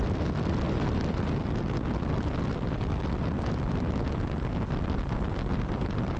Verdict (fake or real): real